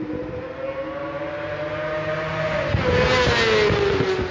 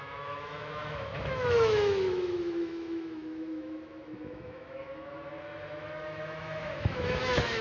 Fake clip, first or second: second